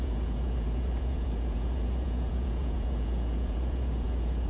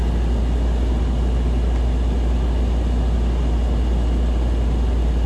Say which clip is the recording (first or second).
second